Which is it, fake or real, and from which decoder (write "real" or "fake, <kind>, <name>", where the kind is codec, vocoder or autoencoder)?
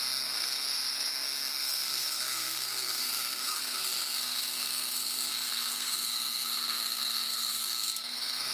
fake, codec, SNAC